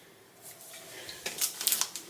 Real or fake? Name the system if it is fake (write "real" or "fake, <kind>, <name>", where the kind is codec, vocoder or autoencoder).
real